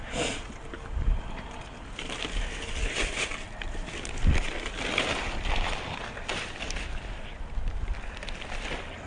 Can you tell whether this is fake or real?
real